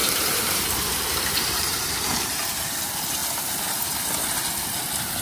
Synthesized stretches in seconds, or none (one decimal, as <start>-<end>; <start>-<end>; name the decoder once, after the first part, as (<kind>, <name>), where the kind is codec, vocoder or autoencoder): 0.0-2.8 (vocoder, BigVGAN v2)